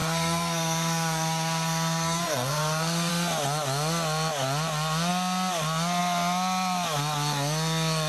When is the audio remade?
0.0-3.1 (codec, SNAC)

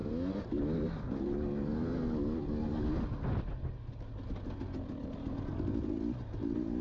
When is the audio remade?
none

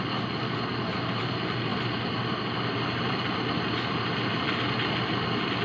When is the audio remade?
none